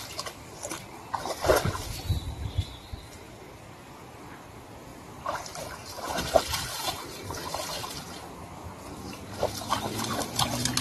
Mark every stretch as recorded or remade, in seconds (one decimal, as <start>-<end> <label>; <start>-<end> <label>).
0.0-4.9 recorded; 4.9-6.2 remade; 6.2-6.7 recorded; 6.7-7.7 remade; 7.7-10.1 recorded; 10.1-10.8 remade